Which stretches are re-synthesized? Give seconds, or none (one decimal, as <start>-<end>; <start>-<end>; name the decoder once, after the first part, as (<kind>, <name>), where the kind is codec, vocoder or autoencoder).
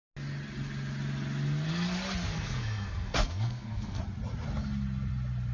2.3-4.0 (codec, SNAC)